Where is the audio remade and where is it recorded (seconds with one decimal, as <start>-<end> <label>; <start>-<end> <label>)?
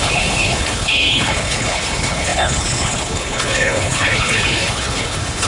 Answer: 0.0-5.5 remade